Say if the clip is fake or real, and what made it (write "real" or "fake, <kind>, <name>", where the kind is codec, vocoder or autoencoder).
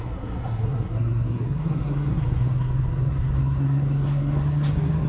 fake, codec, SNAC